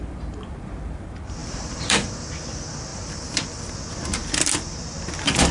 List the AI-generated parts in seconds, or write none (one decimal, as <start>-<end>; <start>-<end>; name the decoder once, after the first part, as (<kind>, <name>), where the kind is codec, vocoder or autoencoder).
1.4-2.3 (vocoder, BigVGAN v2); 2.9-3.7